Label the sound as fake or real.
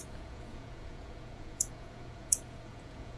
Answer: fake